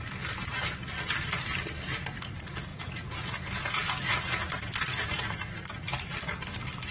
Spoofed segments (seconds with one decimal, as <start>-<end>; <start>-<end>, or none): 2.7-4.5; 4.9-5.6